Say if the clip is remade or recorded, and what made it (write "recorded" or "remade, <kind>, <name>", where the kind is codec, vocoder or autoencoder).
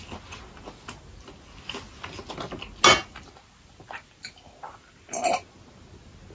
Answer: recorded